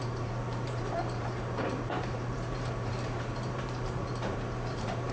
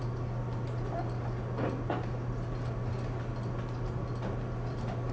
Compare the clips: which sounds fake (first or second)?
first